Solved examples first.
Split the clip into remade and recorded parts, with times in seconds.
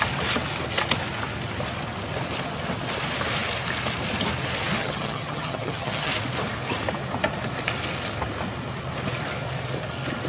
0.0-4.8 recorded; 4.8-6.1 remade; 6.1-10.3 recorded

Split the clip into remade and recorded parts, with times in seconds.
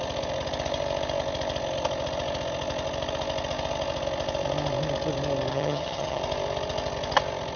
0.0-5.5 recorded; 5.5-6.2 remade; 6.2-7.6 recorded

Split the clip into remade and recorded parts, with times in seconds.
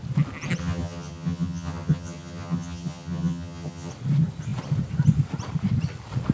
0.0-0.6 recorded; 0.6-3.9 remade; 3.9-6.3 recorded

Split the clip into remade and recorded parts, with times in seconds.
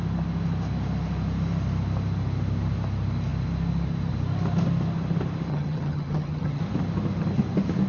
0.0-5.5 recorded; 5.5-6.6 remade; 6.6-7.9 recorded